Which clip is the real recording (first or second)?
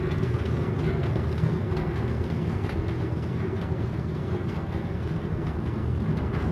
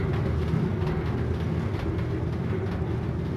second